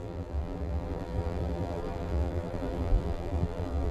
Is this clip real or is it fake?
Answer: fake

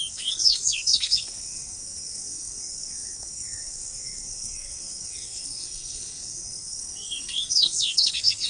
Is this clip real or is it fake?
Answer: fake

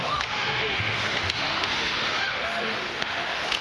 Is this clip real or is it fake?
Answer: fake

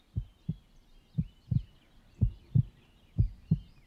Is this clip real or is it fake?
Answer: real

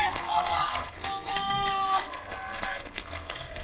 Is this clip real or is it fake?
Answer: fake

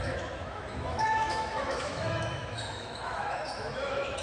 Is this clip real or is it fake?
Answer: fake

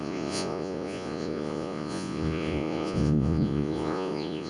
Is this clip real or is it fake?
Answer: fake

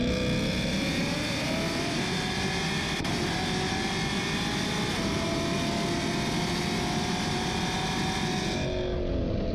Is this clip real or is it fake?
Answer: real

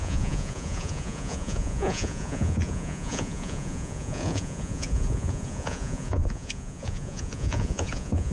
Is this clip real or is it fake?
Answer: fake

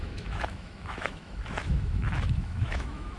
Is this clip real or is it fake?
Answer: fake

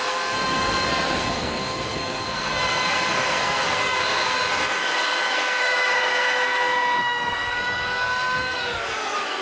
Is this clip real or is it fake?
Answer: fake